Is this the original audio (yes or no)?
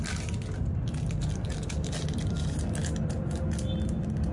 yes